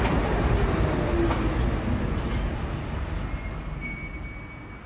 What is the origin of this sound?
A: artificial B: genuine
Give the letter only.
B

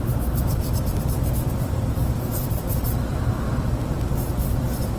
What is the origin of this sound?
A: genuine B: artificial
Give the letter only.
A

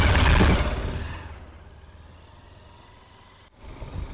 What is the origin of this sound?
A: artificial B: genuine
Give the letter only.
B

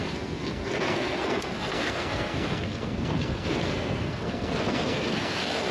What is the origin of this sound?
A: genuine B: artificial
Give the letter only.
B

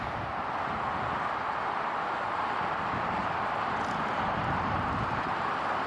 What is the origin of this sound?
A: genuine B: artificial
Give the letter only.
A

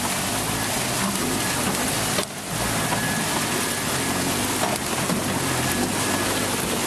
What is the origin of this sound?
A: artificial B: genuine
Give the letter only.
B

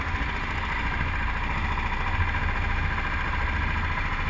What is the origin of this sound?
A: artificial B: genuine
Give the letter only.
B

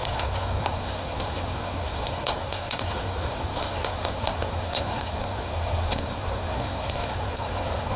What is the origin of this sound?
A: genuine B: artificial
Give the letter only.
B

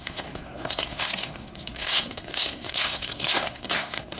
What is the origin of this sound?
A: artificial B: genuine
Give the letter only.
A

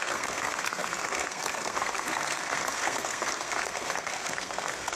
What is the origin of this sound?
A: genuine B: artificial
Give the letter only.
B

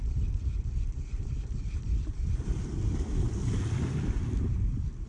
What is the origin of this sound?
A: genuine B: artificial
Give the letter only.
A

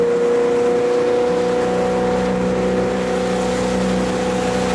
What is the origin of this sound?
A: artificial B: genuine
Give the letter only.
B